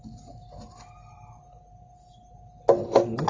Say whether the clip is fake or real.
real